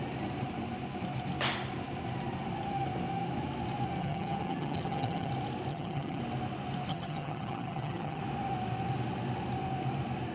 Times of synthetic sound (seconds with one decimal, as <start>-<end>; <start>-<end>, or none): 4.0-5.3; 5.7-6.2; 6.9-8.2